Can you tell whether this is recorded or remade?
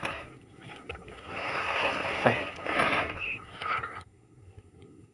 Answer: remade